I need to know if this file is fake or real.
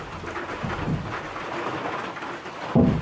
real